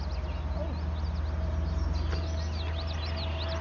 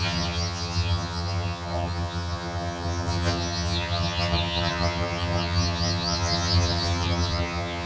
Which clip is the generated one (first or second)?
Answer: second